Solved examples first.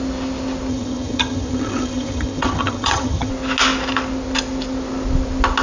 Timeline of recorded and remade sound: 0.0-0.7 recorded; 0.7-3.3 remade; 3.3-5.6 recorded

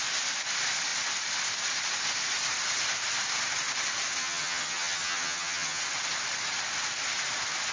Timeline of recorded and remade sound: 0.0-4.2 recorded; 4.2-5.8 remade; 5.8-7.7 recorded

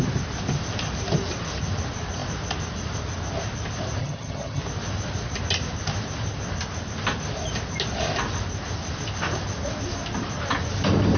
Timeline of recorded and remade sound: 0.0-4.0 recorded; 4.0-4.6 remade; 4.6-11.2 recorded

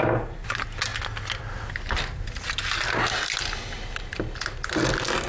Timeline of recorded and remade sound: 0.0-5.3 recorded